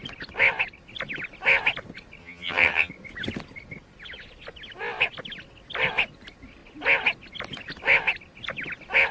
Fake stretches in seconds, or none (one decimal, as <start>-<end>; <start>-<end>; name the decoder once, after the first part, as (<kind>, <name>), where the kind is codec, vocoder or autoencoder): 2.2-2.9 (vocoder, HiFi-GAN)